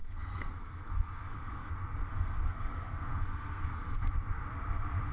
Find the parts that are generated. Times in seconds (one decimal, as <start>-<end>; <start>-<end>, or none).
0.0-1.7; 2.1-4.1